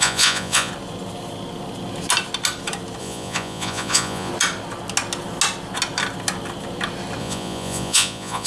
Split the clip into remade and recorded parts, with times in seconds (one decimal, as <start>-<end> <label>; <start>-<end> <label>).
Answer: 0.0-0.7 remade; 0.7-3.0 recorded; 3.0-4.3 remade; 4.3-7.2 recorded; 7.2-8.5 remade